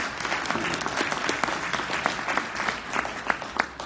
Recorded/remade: recorded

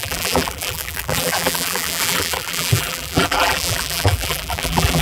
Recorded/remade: remade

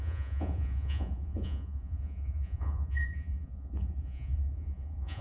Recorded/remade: remade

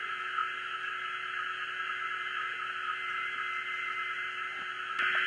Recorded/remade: recorded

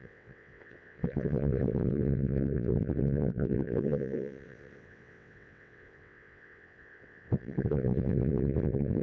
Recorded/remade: remade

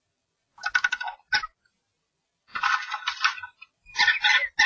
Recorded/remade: recorded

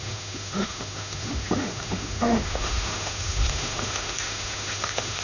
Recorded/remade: remade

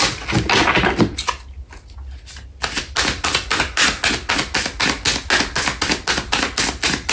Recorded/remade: recorded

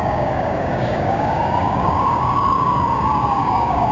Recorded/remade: remade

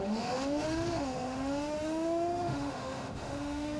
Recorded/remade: remade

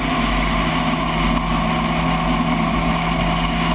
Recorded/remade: recorded